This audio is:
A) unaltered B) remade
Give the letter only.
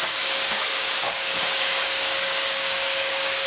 B